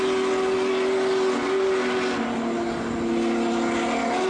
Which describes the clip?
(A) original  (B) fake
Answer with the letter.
A